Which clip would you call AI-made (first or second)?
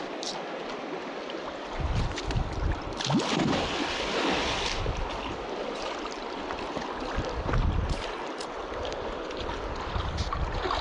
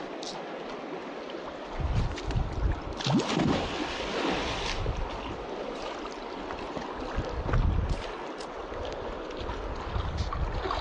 first